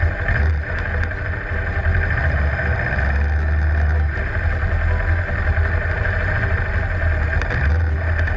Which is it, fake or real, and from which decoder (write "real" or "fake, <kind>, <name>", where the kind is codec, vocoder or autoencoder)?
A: real